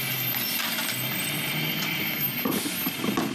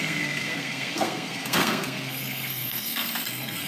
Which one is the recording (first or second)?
first